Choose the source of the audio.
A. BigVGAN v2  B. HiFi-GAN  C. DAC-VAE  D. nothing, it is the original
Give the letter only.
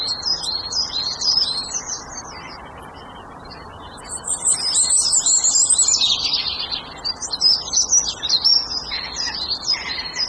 D